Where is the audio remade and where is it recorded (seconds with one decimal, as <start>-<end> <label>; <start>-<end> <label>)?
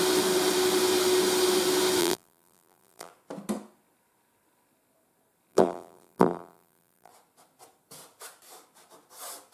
0.0-2.0 recorded; 2.0-3.1 remade; 3.1-5.5 recorded; 5.5-7.1 remade; 7.1-9.5 recorded